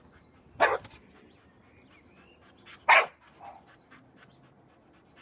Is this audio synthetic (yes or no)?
no